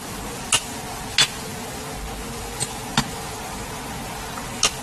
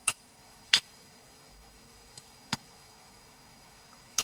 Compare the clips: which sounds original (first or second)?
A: first